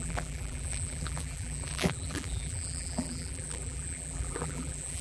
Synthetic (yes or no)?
yes